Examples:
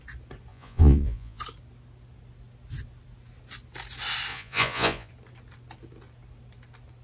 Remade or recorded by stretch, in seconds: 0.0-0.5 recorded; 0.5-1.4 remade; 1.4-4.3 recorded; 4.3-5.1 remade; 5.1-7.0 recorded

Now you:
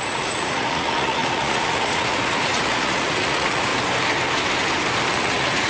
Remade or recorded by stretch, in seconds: 0.0-3.7 remade; 3.7-5.1 recorded; 5.1-5.7 remade